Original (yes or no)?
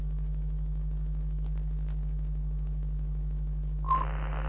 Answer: yes